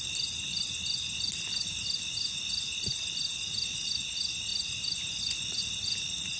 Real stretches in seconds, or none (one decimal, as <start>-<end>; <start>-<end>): 0.0-6.4